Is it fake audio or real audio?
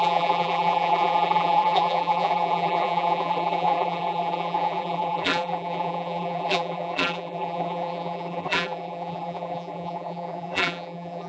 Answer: fake